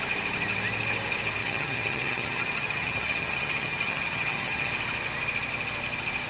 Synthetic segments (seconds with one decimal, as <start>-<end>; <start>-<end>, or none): 1.4-4.7